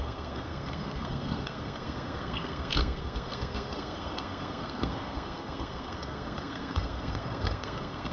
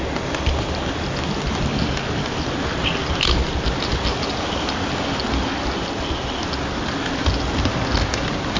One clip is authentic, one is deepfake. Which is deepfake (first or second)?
first